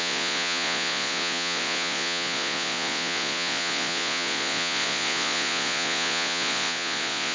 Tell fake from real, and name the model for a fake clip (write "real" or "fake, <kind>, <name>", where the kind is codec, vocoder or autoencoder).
fake, vocoder, Vocos